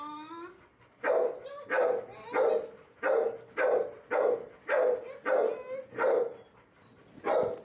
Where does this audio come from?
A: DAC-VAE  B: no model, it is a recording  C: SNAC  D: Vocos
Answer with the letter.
B